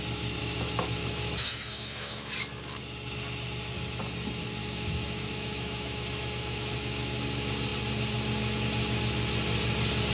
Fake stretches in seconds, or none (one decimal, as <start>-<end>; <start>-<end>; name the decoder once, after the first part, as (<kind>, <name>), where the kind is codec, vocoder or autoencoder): 0.4-2.3 (autoencoder, DAC-VAE); 4.6-7.2